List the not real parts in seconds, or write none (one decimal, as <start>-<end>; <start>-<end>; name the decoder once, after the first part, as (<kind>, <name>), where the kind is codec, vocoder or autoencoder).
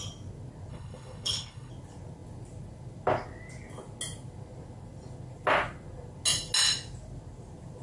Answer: 0.7-1.7 (codec, HILCodec)